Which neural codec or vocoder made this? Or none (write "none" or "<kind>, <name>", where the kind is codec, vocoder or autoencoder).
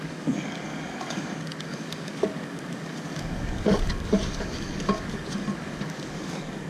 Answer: codec, DAC